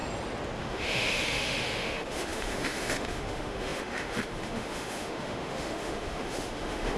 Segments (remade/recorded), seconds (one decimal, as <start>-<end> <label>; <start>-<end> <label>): 0.0-0.6 recorded; 0.6-7.0 remade